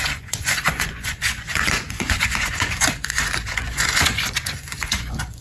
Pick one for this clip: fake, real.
fake